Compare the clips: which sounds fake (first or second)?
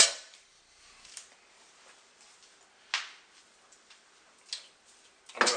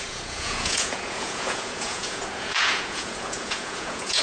second